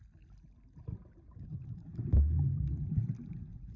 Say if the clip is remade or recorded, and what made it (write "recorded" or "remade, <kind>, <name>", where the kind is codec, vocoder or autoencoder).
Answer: recorded